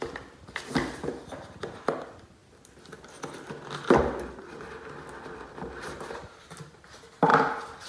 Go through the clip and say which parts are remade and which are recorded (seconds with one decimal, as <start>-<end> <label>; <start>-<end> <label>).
0.0-2.4 remade; 2.4-5.5 recorded; 5.5-7.3 remade; 7.3-7.9 recorded